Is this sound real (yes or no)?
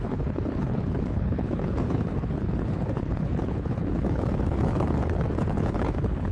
no